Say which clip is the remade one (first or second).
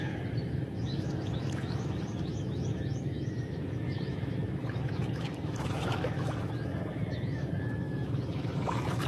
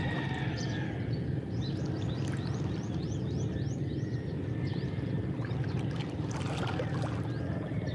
first